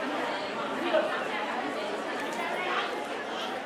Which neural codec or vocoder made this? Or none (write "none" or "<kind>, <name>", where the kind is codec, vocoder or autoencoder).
none